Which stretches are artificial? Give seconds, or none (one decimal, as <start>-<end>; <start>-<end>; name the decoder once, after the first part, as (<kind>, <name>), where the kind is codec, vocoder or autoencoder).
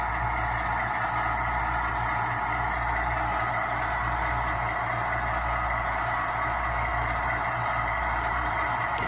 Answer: 6.9-9.1 (vocoder, BigVGAN v2)